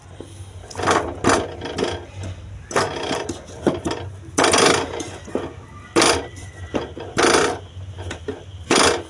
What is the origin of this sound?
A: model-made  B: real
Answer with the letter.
B